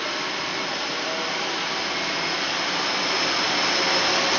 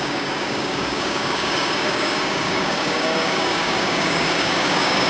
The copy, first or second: second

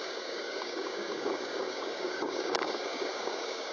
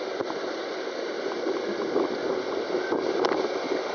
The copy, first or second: first